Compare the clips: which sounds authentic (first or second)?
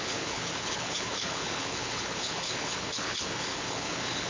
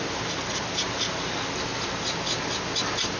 second